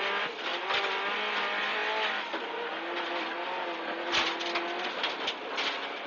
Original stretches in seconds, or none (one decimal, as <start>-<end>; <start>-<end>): 0.0-6.1

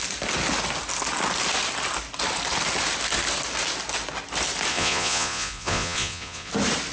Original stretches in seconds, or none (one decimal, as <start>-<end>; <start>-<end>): 0.0-4.7; 6.5-6.9

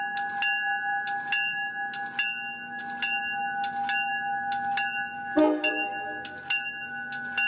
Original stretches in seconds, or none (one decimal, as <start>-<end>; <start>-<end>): 0.0-7.5